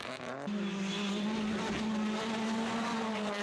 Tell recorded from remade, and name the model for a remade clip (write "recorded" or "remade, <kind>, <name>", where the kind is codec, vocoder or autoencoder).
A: recorded